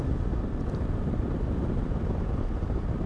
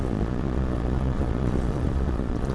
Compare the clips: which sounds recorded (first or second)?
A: first